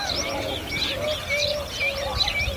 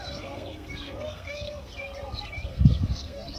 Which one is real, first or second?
first